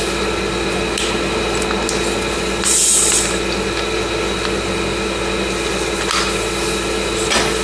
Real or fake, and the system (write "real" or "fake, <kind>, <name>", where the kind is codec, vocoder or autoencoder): real